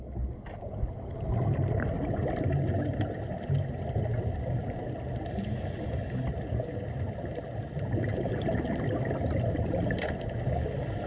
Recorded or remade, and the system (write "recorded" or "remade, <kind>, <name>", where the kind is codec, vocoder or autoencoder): recorded